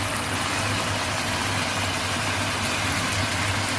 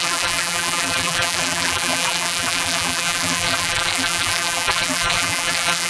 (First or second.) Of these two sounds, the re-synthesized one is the second